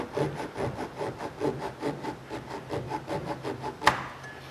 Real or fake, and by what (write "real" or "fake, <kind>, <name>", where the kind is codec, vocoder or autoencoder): real